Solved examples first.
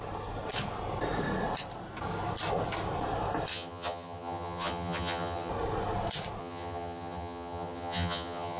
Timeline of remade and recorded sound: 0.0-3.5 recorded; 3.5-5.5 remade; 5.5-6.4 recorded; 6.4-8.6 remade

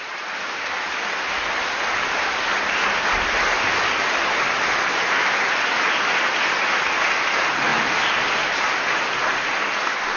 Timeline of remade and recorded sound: 0.0-10.2 recorded

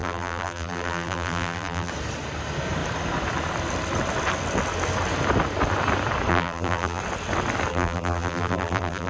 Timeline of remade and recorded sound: 0.0-1.9 remade; 1.9-6.3 recorded; 6.3-7.0 remade; 7.0-7.7 recorded; 7.7-9.1 remade

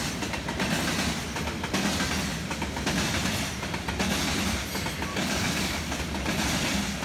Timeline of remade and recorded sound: 0.0-5.1 recorded; 5.1-6.0 remade; 6.0-7.0 recorded

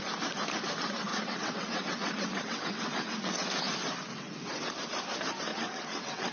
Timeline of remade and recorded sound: 0.0-1.1 recorded; 1.1-3.4 remade; 3.4-4.1 recorded; 4.1-4.7 remade; 4.7-5.5 recorded; 5.5-6.3 remade

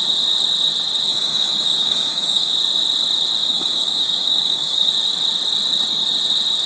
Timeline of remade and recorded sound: 0.0-1.1 recorded; 1.1-2.5 remade; 2.5-3.4 recorded; 3.4-4.9 remade; 4.9-6.7 recorded

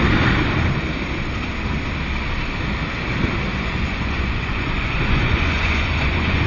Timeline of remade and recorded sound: 0.0-3.5 recorded; 3.5-6.5 remade